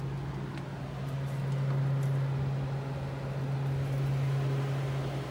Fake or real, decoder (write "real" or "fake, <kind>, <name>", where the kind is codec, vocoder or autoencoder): real